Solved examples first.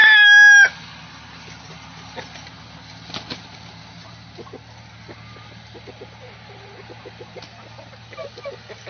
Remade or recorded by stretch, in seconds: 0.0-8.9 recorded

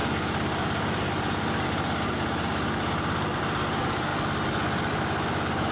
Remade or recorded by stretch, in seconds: 0.0-5.7 recorded

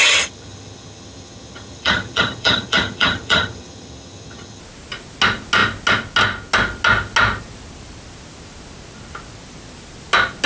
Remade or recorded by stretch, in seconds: 0.0-4.6 remade; 4.6-10.5 recorded